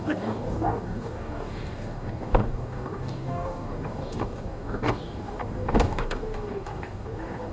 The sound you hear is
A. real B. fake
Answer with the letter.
B